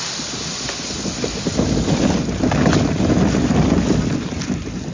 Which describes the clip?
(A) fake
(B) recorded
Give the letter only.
B